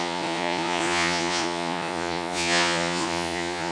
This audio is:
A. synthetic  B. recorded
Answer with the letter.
A